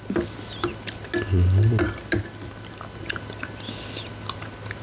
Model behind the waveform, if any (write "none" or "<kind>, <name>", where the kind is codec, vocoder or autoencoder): none